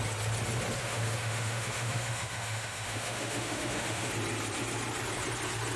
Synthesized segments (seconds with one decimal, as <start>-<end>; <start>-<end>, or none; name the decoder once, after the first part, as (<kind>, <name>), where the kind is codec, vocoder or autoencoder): 0.8-4.1 (autoencoder, DAC-VAE)